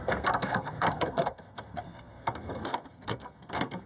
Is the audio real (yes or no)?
no